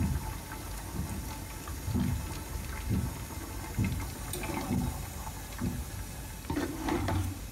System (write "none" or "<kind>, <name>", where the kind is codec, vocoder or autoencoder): none